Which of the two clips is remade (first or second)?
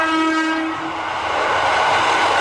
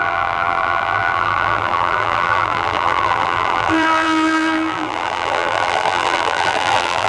second